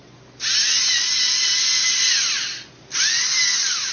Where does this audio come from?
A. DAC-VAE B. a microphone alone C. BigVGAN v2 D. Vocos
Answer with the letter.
B